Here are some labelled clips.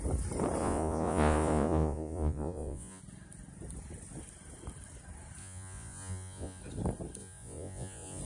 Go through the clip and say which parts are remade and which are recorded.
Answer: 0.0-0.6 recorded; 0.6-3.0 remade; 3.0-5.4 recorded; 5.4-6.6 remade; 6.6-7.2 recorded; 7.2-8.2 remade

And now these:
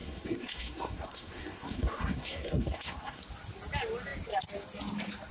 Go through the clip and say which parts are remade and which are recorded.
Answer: 0.0-3.2 remade; 3.2-5.3 recorded

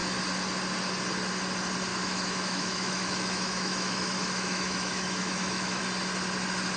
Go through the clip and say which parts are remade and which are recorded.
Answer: 0.0-1.9 recorded; 1.9-5.8 remade; 5.8-6.8 recorded

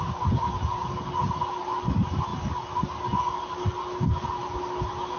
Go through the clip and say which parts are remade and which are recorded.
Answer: 0.0-5.2 recorded

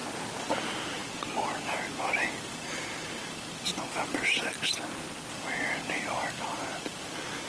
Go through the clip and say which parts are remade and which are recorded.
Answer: 0.0-6.7 recorded; 6.7-7.5 remade

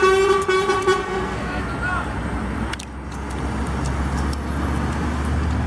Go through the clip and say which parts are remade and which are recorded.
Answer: 0.0-1.0 recorded; 1.0-1.6 remade; 1.6-5.7 recorded

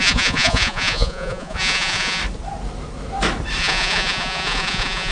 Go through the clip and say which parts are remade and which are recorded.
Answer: 0.0-2.2 remade; 2.2-3.6 recorded; 3.6-5.1 remade